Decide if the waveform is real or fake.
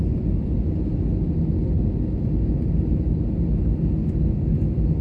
real